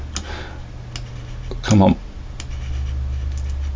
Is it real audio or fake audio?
real